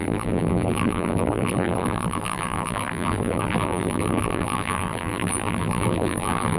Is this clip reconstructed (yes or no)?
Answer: yes